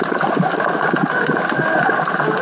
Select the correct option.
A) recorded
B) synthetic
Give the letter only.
A